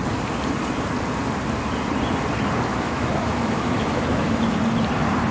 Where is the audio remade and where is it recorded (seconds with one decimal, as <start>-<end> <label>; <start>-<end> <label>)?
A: 0.0-2.7 recorded; 2.7-4.6 remade; 4.6-5.3 recorded